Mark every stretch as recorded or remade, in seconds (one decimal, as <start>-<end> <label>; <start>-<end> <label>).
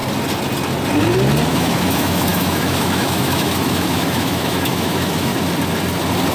0.0-1.5 recorded; 1.5-5.3 remade; 5.3-6.3 recorded